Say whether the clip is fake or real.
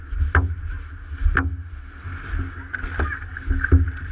real